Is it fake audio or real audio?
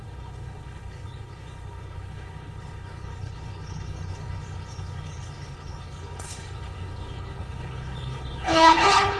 fake